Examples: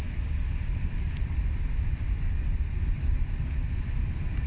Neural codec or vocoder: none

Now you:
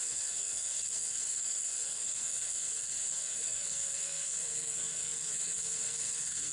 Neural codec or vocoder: codec, SNAC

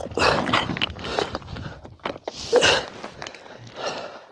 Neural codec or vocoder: none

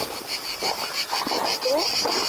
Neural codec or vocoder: none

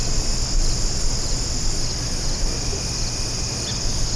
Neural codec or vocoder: none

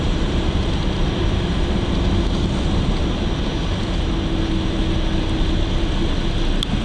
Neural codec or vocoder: none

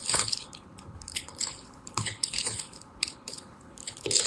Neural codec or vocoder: codec, HILCodec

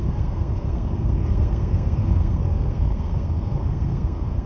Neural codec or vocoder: codec, SNAC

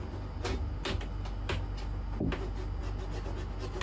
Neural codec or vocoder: none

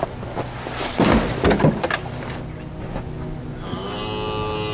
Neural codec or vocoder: none